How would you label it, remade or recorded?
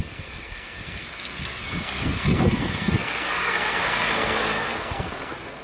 remade